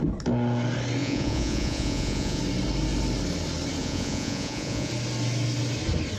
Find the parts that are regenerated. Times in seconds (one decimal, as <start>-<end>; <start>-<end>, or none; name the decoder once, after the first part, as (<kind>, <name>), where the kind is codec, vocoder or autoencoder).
1.0-2.4 (vocoder, Vocos); 3.8-4.9